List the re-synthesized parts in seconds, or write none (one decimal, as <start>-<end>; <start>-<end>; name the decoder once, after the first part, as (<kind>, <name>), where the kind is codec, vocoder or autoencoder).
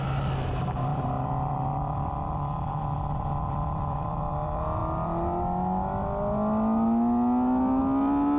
0.9-4.2 (vocoder, BigVGAN v2)